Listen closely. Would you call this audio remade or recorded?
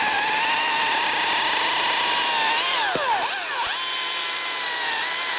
remade